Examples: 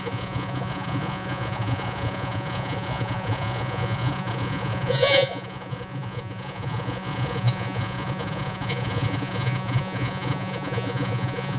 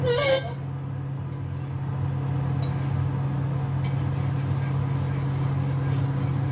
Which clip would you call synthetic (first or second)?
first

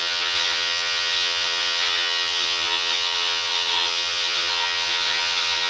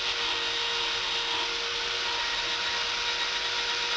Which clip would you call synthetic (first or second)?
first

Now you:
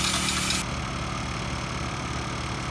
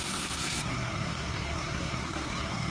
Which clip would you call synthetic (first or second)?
second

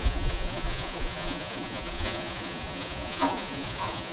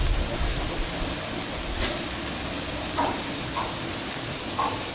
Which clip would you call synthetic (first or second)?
first